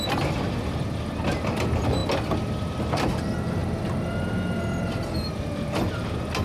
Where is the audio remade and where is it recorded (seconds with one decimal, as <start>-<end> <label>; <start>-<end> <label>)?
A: 0.0-6.4 recorded